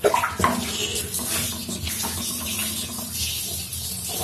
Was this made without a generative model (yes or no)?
yes